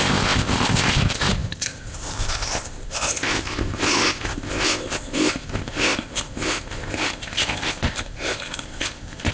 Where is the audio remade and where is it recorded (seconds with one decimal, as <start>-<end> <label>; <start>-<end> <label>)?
0.0-9.3 remade